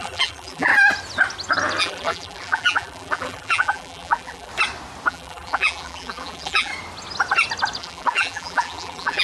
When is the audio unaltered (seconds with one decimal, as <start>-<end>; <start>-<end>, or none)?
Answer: 0.7-1.8; 4.5-5.1; 6.7-7.8